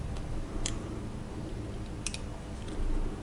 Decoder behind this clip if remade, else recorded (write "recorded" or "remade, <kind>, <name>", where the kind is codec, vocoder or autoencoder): remade, vocoder, BigVGAN v2